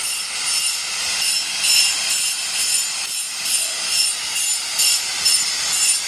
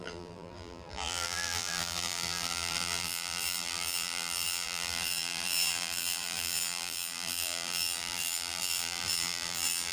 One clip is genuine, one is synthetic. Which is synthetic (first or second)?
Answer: second